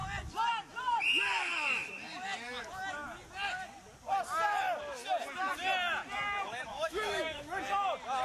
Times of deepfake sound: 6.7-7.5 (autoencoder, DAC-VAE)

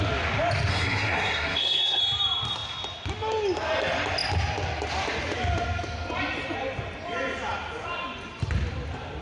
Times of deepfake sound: 0.7-2.0 (codec, SNAC)